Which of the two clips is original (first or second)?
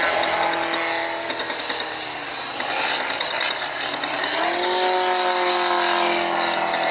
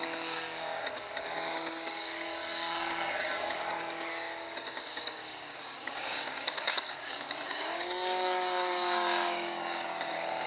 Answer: first